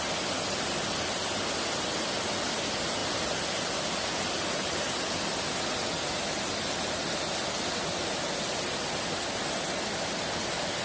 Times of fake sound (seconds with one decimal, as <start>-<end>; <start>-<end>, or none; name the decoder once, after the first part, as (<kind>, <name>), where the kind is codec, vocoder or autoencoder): none

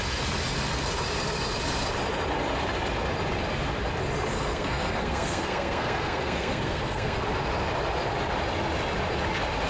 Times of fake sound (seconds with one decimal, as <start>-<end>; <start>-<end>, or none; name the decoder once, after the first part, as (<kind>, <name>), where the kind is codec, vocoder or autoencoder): 4.3-7.2 (codec, SNAC)

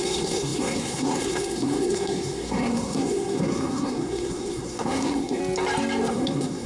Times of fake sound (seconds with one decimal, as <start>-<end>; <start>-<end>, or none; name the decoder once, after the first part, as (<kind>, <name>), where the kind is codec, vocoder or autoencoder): 0.0-5.4 (codec, SNAC); 6.1-6.7

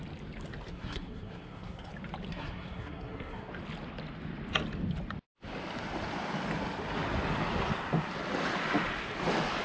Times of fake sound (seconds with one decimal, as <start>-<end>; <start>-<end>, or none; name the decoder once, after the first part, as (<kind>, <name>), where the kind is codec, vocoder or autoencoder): 0.7-1.9 (codec, SNAC); 2.3-3.5

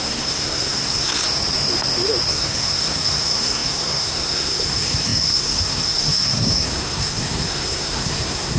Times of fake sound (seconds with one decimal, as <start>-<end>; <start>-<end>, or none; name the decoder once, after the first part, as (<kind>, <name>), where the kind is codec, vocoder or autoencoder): 0.0-1.2 (codec, SNAC); 2.3-8.6

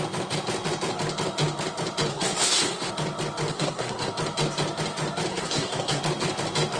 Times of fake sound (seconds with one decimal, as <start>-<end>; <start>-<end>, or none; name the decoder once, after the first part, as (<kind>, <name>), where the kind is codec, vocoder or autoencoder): 2.1-2.9 (codec, SNAC); 3.5-4.1; 5.3-6.0

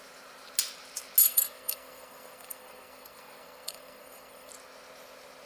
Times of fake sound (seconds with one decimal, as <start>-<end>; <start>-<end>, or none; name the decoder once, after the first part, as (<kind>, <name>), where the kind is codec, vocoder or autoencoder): 1.2-4.5 (codec, SNAC)

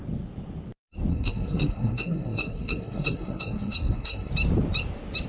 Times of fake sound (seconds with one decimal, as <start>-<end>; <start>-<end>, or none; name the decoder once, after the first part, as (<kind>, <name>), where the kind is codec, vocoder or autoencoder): 1.1-4.3 (codec, SNAC)